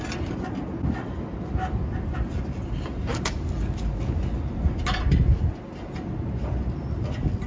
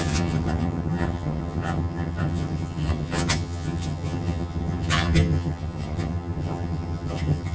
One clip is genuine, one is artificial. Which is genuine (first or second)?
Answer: first